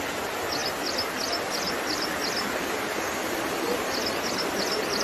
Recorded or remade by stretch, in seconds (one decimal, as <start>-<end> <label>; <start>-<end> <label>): 0.0-5.0 recorded